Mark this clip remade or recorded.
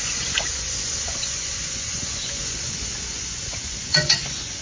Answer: remade